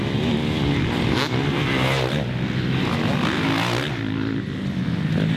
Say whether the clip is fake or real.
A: real